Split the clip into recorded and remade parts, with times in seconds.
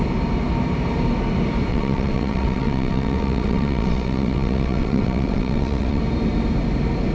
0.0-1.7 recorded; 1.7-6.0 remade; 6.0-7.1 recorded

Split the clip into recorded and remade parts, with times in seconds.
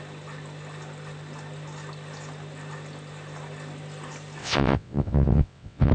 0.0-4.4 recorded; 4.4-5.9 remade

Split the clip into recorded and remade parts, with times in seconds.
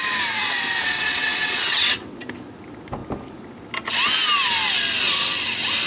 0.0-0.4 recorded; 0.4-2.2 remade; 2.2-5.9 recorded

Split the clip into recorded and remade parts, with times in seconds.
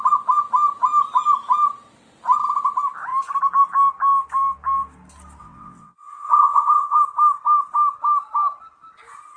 0.0-5.4 recorded; 5.4-7.0 remade; 7.0-9.4 recorded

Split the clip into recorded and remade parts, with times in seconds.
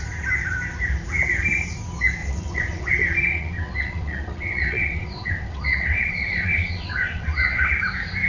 0.0-2.2 recorded; 2.2-2.9 remade; 2.9-3.3 recorded; 3.3-7.7 remade; 7.7-8.3 recorded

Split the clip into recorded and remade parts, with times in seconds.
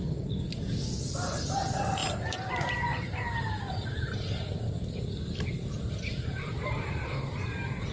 0.0-7.9 recorded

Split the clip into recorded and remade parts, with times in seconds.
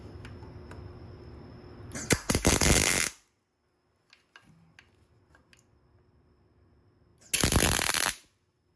0.0-8.8 recorded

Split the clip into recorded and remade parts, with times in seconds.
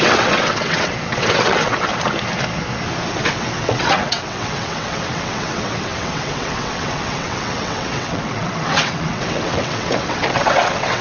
0.0-1.9 remade; 1.9-3.1 recorded; 3.1-11.0 remade